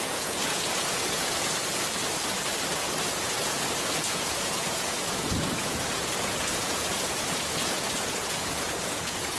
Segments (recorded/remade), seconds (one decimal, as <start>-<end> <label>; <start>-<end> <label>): 0.0-1.6 remade; 1.6-3.0 recorded; 3.0-9.4 remade